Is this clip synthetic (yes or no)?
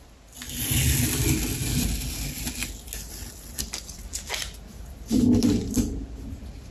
no